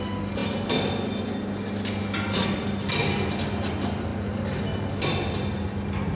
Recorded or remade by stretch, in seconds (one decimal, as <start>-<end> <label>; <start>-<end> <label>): 0.0-6.1 recorded